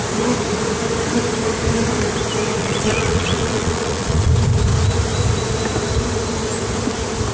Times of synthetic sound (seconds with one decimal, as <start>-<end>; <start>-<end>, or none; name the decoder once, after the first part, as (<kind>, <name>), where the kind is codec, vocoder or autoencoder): 2.6-4.3 (vocoder, Vocos)